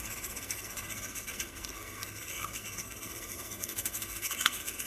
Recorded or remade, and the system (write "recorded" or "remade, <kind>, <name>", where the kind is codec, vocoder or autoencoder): remade, codec, SNAC